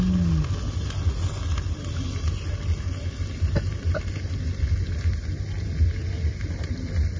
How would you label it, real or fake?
real